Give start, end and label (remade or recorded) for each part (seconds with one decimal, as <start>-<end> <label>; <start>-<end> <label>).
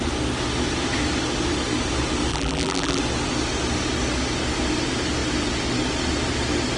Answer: 0.0-2.3 recorded; 2.3-3.0 remade; 3.0-6.8 recorded